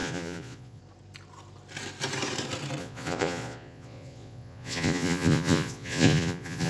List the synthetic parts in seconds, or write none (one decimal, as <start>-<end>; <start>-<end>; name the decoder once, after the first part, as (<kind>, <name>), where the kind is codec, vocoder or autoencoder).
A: 0.0-0.8 (vocoder, Vocos); 2.8-6.7